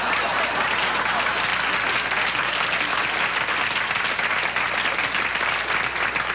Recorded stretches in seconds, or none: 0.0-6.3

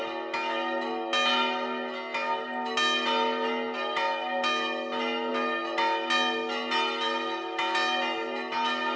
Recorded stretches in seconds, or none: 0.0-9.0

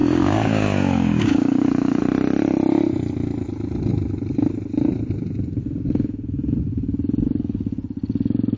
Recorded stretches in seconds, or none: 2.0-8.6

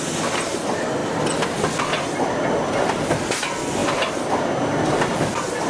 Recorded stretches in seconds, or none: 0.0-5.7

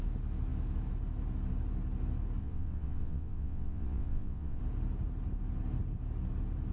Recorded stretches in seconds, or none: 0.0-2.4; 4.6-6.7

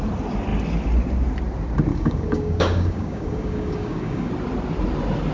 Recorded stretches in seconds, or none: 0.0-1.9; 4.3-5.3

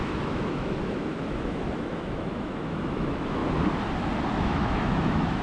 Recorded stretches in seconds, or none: 3.4-4.4